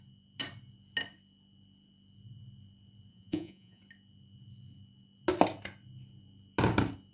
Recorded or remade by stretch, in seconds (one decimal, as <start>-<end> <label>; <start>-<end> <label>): 0.0-3.1 recorded; 3.1-3.8 remade; 3.8-7.1 recorded